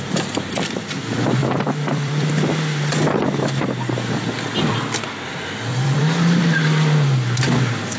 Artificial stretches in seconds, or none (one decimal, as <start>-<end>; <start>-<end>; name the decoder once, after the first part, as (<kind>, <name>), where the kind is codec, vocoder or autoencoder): 1.4-2.3 (vocoder, BigVGAN v2); 5.7-6.4